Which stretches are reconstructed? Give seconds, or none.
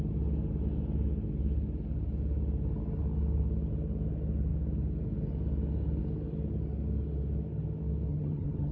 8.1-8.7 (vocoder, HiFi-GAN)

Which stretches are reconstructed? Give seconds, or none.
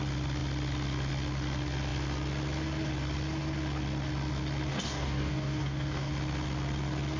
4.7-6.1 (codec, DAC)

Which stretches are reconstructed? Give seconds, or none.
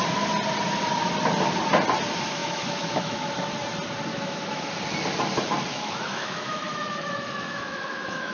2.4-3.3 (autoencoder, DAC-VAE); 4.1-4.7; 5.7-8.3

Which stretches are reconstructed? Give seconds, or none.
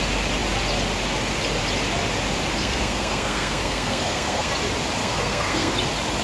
2.6-4.5 (codec, SNAC); 5.0-5.7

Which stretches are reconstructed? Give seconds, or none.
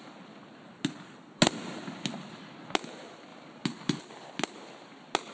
none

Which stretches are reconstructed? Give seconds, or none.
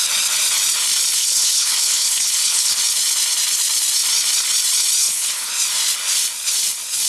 1.2-2.8 (codec, HILCodec); 5.0-5.5